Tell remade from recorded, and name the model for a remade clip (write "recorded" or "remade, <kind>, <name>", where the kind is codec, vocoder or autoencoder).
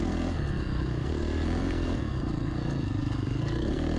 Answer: remade, codec, SNAC